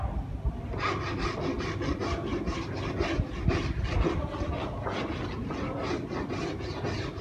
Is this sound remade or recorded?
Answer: recorded